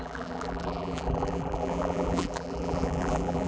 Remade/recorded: remade